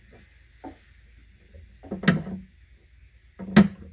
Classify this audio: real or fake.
real